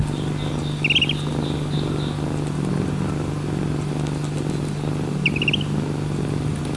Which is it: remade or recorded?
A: recorded